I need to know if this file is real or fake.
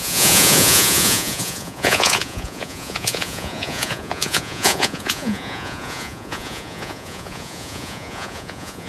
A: fake